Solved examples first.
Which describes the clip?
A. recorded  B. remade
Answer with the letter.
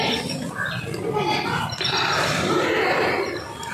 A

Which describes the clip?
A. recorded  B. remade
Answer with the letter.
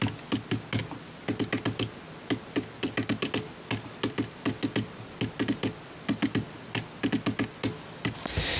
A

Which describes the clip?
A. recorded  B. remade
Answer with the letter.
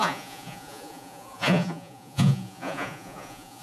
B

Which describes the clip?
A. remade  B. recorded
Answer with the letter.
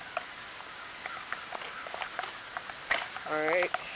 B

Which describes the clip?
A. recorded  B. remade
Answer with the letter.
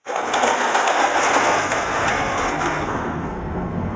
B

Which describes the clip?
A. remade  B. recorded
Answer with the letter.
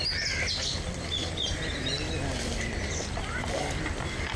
B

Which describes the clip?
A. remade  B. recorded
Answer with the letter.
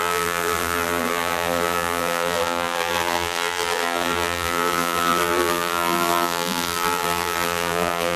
A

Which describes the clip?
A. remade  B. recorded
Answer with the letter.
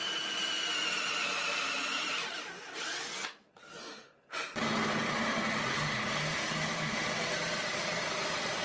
B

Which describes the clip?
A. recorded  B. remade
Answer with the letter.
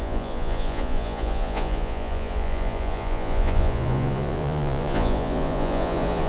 B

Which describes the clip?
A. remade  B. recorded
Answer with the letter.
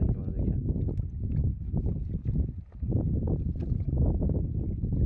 B